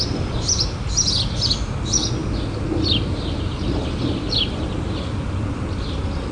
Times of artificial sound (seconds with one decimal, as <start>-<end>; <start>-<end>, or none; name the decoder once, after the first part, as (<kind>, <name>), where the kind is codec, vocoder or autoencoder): none